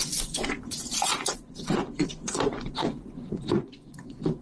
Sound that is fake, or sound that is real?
fake